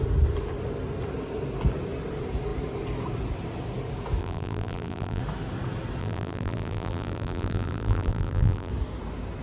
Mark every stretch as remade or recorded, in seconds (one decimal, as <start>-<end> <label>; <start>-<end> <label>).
0.0-4.2 recorded; 4.2-5.2 remade; 5.2-6.0 recorded; 6.0-8.7 remade; 8.7-9.4 recorded